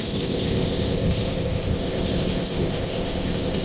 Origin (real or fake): fake